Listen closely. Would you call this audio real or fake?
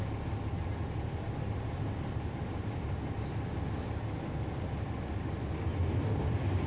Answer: real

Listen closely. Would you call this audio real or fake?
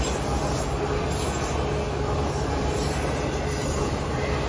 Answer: real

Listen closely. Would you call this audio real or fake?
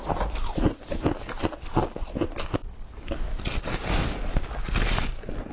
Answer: real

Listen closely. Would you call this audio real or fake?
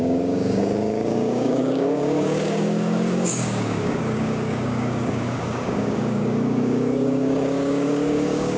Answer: fake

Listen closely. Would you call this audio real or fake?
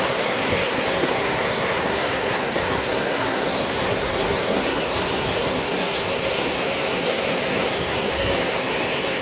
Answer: fake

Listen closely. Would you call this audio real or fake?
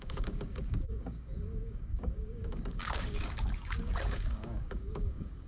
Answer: fake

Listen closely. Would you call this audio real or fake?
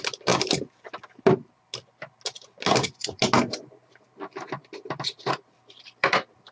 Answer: real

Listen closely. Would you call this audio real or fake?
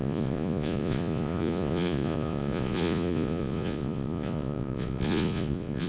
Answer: fake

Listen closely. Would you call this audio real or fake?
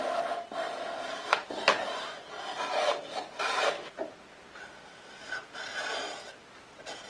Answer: real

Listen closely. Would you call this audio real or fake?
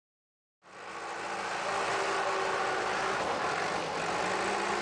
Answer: real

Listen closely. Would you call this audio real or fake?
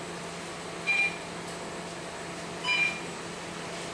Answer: real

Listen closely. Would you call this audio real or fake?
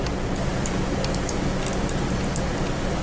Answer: real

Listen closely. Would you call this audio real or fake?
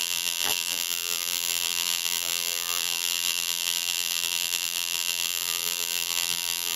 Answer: fake